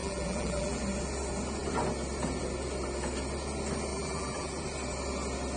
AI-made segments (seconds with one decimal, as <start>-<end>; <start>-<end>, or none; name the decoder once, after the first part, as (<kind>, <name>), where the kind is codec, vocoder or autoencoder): 0.0-0.8 (vocoder, BigVGAN v2); 3.9-4.6